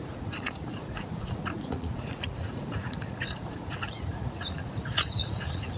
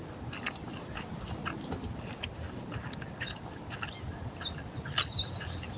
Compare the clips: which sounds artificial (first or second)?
first